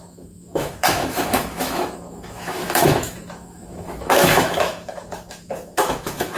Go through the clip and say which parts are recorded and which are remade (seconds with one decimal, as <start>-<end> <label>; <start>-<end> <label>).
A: 0.0-6.4 remade